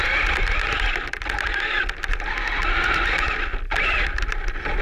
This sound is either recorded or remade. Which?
recorded